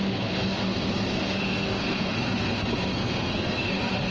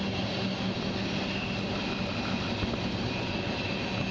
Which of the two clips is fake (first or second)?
first